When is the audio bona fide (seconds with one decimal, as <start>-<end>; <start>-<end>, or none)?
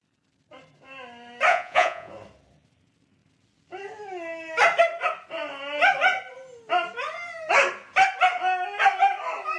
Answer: 0.0-1.5; 2.1-9.6